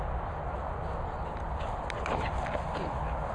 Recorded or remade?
recorded